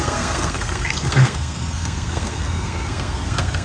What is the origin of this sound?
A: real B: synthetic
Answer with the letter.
B